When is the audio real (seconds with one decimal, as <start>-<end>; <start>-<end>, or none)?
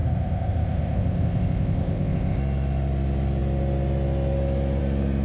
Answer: 2.4-5.2